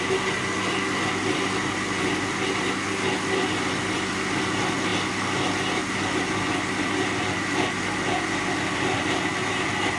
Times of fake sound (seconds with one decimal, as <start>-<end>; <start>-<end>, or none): none